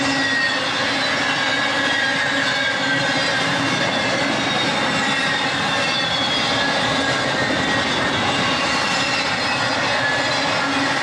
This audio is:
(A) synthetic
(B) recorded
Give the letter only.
B